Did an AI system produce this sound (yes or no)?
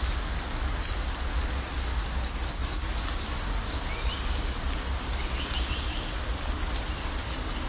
no